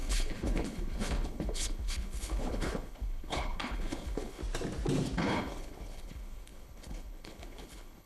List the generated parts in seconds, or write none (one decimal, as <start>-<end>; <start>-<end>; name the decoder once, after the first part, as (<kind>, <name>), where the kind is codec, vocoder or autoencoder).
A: 0.0-4.4 (codec, HILCodec); 5.2-8.1